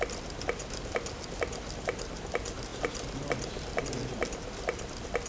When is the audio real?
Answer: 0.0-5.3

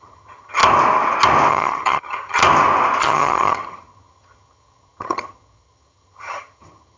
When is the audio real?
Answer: 0.6-1.5; 2.4-3.0

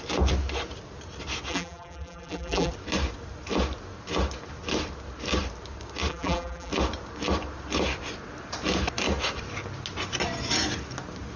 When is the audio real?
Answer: 0.0-1.5; 2.7-6.1; 6.7-11.4